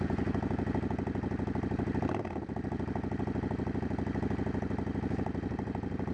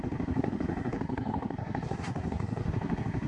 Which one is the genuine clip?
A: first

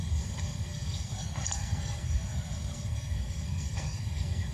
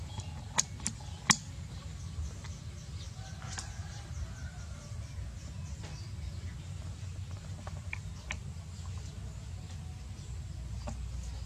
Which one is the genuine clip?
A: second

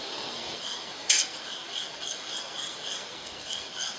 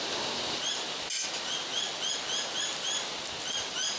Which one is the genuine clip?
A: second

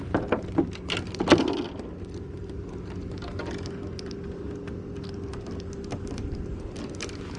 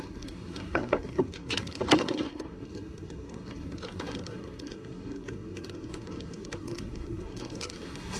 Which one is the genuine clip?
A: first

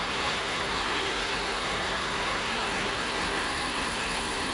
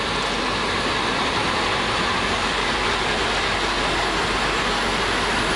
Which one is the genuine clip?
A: second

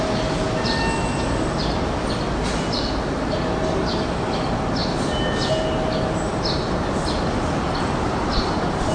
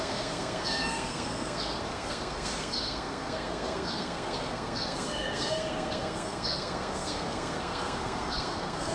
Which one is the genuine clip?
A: first